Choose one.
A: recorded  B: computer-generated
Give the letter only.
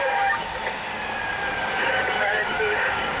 B